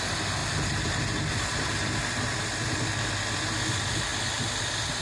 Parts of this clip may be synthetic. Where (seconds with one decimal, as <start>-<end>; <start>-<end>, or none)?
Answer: none